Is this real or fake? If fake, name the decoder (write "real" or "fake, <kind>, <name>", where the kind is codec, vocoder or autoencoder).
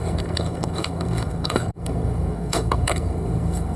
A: fake, codec, SNAC